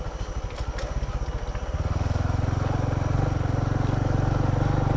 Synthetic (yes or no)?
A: no